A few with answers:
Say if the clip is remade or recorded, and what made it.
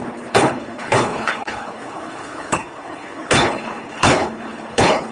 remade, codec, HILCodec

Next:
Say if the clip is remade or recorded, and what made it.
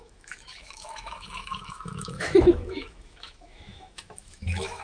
remade, autoencoder, DAC-VAE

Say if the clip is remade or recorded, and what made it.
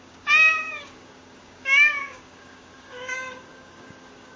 remade, codec, DAC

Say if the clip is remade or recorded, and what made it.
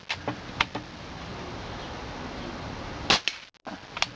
recorded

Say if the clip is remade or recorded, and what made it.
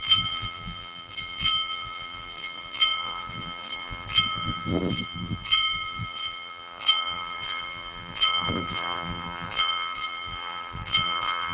remade, vocoder, BigVGAN v2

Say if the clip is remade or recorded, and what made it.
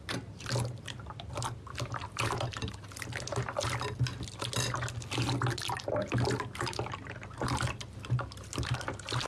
recorded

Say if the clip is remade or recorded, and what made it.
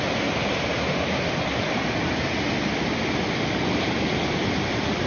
recorded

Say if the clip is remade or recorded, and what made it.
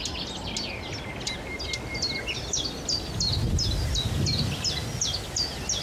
recorded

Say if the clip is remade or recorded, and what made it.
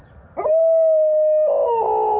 recorded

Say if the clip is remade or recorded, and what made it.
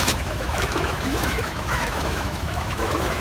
remade, autoencoder, DAC-VAE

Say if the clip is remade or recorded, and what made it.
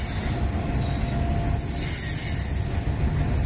recorded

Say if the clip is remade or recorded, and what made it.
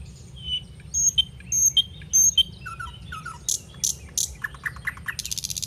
recorded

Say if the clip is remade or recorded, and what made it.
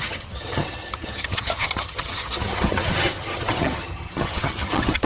remade, vocoder, HiFi-GAN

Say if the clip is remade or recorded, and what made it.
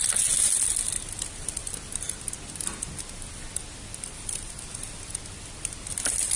recorded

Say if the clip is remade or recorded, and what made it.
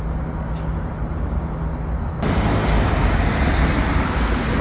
recorded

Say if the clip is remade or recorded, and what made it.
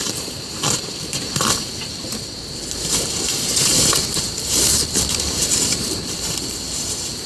remade, vocoder, BigVGAN v2